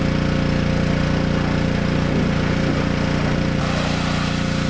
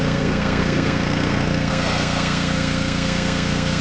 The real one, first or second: first